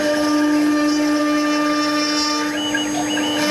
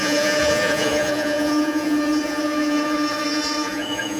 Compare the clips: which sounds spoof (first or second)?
second